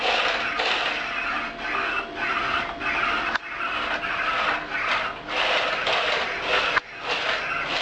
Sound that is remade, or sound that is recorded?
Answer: recorded